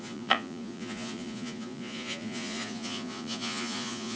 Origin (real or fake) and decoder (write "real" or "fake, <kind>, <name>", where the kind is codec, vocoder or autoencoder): fake, vocoder, Vocos